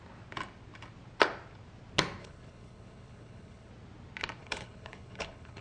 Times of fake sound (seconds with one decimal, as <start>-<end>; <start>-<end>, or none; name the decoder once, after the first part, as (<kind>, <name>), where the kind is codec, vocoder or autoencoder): 2.2-3.7 (codec, HILCodec); 4.4-5.6